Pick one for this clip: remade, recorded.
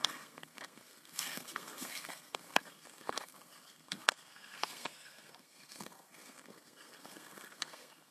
remade